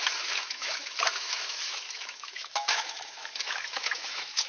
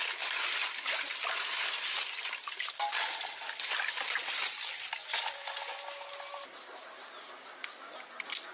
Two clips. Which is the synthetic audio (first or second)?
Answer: first